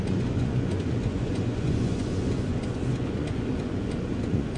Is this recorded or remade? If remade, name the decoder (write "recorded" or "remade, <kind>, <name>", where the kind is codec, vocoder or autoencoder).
remade, vocoder, Vocos